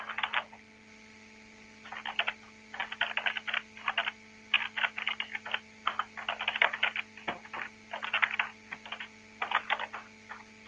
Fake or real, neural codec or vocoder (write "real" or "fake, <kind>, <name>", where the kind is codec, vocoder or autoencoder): real